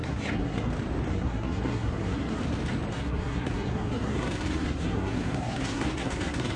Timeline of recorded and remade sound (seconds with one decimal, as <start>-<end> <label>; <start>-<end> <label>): 0.0-0.7 remade; 0.7-1.1 recorded; 1.1-2.4 remade; 2.4-2.9 recorded; 2.9-6.6 remade